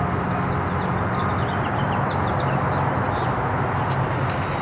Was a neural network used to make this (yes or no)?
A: no